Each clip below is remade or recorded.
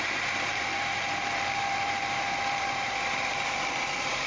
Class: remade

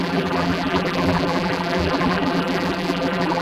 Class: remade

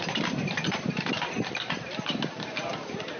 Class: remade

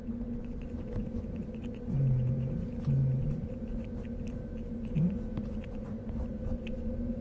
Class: recorded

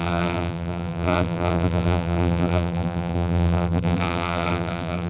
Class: remade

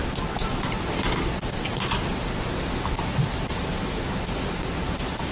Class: recorded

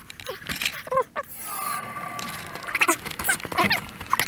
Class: recorded